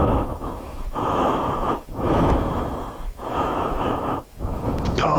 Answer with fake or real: fake